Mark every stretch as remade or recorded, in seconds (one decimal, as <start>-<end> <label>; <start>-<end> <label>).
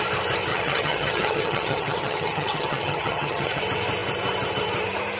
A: 0.0-0.5 recorded; 0.5-3.6 remade; 3.6-5.2 recorded